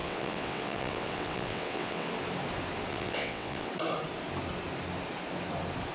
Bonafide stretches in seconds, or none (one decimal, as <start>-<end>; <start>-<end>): 2.1-2.9; 3.7-5.9